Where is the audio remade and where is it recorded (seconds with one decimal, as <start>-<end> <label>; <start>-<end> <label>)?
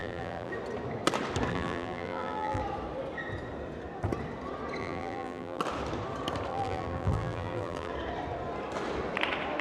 0.0-0.5 remade; 0.5-1.5 recorded; 1.5-2.6 remade; 2.6-4.8 recorded; 4.8-5.6 remade; 5.6-6.5 recorded; 6.5-7.9 remade; 7.9-9.6 recorded